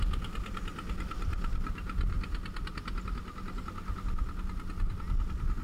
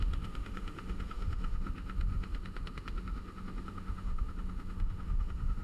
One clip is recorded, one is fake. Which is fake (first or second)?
second